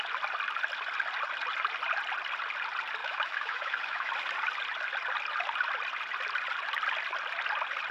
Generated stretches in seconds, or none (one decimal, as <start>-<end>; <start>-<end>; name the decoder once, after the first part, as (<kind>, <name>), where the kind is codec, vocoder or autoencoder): 3.0-4.1 (autoencoder, DAC-VAE)